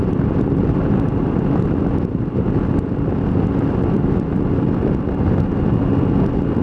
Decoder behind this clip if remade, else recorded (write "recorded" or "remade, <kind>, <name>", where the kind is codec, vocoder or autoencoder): recorded